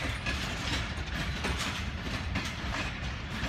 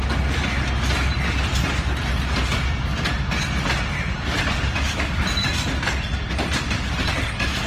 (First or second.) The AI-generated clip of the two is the first